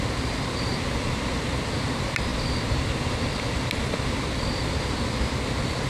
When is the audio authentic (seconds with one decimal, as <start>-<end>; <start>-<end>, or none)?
0.0-5.9